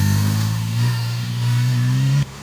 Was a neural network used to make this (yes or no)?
yes